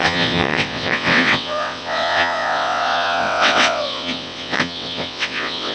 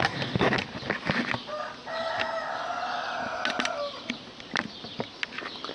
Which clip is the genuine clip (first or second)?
second